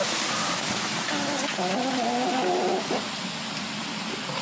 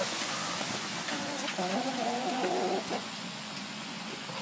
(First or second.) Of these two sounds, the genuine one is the first